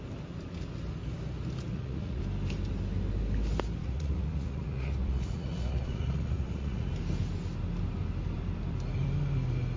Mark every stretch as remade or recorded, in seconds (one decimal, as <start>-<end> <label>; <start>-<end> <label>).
0.0-1.7 recorded; 1.7-2.2 remade; 2.2-3.8 recorded; 3.8-6.9 remade; 6.9-9.8 recorded